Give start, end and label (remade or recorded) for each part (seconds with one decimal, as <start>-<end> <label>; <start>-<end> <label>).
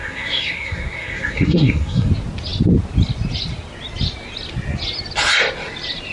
0.0-2.1 remade; 2.1-6.1 recorded